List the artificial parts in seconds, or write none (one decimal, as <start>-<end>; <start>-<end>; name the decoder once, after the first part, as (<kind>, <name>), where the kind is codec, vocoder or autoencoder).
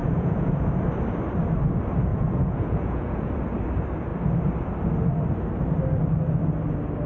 0.0-0.5 (vocoder, Vocos); 2.1-3.3